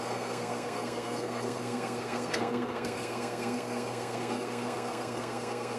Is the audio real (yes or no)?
no